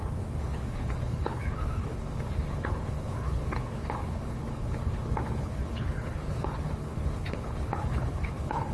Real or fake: fake